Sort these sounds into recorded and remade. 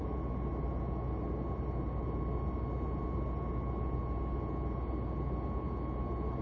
recorded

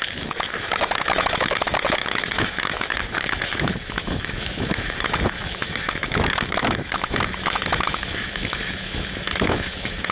remade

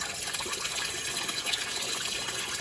remade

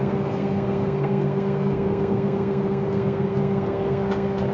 remade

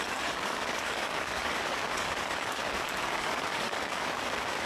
remade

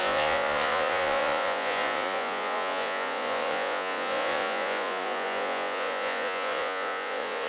remade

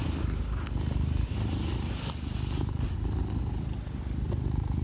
recorded